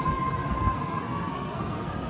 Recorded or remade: remade